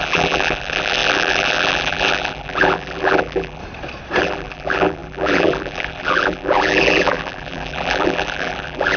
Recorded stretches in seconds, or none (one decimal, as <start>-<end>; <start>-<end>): 3.6-4.2